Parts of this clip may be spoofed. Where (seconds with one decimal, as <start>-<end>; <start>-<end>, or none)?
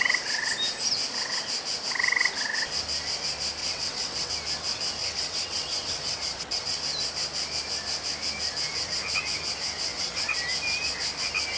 3.6-4.3; 5.0-6.8; 9.9-10.4